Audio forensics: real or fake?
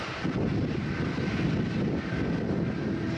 real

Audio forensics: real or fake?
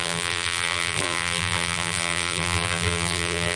fake